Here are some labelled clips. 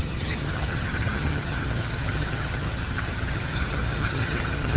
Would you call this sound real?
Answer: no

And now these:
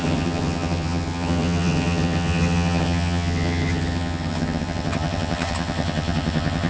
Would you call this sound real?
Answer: no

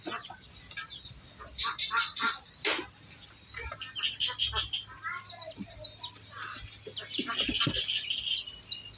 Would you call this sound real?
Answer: yes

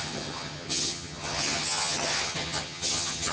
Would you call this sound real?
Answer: no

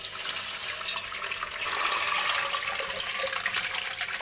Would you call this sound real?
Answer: yes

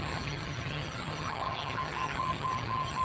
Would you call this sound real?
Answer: no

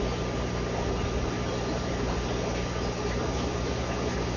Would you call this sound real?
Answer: yes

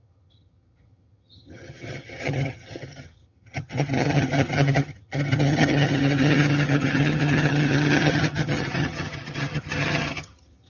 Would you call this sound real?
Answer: no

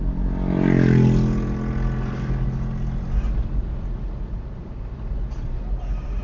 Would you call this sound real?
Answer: yes